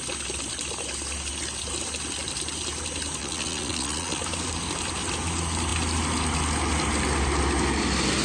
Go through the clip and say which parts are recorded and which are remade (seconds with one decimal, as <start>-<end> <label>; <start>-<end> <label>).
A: 0.0-3.2 recorded; 3.2-4.2 remade; 4.2-8.2 recorded